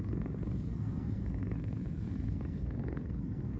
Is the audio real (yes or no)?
no